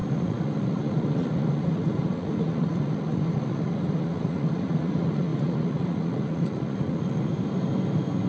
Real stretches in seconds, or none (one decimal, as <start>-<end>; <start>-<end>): 7.3-8.3